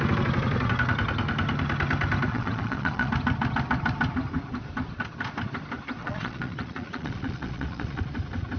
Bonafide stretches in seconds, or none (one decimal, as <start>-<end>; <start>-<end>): 0.0-2.3; 3.1-6.0; 8.0-8.6